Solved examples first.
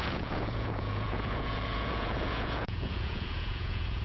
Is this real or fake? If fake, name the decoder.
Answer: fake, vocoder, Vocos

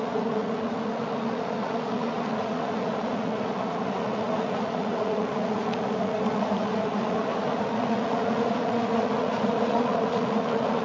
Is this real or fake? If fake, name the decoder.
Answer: fake, vocoder, Vocos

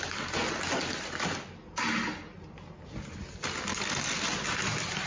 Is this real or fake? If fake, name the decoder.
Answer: real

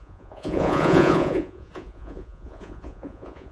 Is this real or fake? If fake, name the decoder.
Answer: fake, vocoder, Vocos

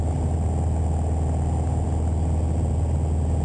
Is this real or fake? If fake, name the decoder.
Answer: real